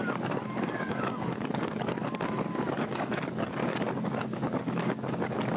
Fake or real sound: fake